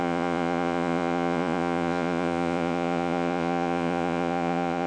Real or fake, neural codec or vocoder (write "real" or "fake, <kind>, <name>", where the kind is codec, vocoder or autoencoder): fake, vocoder, Vocos